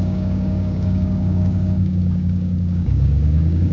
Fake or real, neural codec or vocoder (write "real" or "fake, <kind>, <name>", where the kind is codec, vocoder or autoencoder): fake, codec, DAC